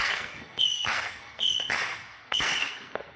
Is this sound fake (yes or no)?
yes